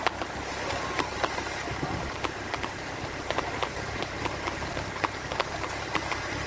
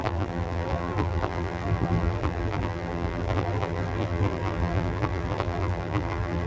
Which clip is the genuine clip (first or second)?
first